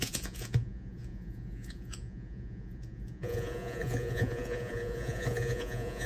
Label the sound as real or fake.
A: fake